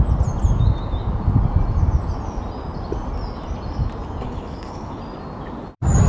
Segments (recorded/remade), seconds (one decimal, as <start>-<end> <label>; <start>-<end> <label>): 0.0-4.2 recorded; 4.2-5.0 remade; 5.0-6.1 recorded